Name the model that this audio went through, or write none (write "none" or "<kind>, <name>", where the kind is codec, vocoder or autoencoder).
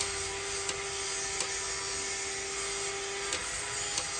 none